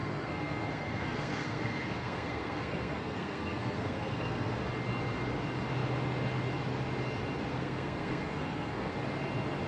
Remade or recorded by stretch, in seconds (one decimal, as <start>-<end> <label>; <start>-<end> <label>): 0.0-4.7 remade; 4.7-7.5 recorded; 7.5-8.9 remade; 8.9-9.7 recorded